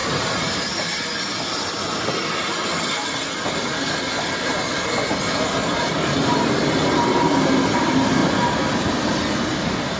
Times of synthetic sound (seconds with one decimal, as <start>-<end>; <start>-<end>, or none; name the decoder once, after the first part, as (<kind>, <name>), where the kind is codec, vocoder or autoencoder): 0.0-1.1 (vocoder, BigVGAN v2); 5.8-8.2; 9.5-10.0